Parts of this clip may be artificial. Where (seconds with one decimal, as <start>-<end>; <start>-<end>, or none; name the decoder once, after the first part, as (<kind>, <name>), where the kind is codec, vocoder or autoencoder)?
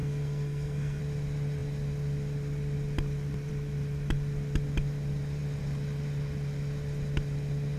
0.0-1.0 (codec, SNAC)